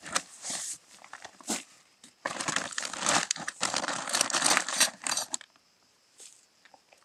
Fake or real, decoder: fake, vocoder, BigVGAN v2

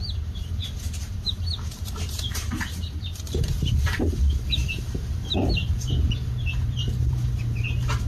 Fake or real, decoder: fake, vocoder, BigVGAN v2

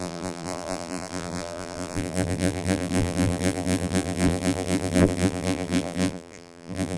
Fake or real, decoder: fake, vocoder, BigVGAN v2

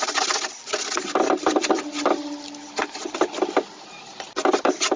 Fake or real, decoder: real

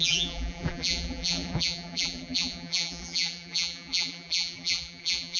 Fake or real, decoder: fake, vocoder, BigVGAN v2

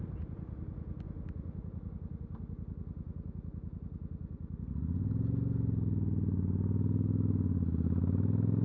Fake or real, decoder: real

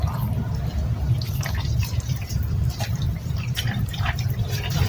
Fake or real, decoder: fake, vocoder, BigVGAN v2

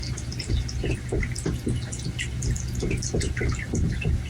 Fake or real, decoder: real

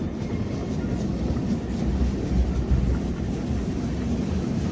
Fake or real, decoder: real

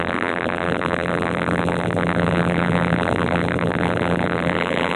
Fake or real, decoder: fake, vocoder, BigVGAN v2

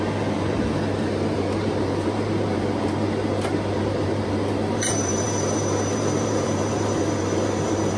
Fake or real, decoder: fake, vocoder, BigVGAN v2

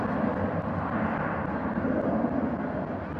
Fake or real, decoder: real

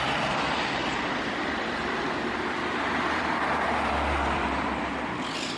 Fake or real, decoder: fake, vocoder, BigVGAN v2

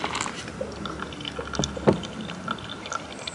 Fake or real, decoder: real